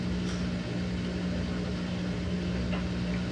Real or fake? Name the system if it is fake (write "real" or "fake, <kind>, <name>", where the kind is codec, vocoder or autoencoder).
real